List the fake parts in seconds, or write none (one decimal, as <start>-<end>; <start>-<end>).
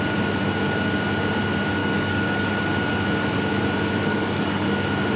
1.8-2.5; 4.1-4.8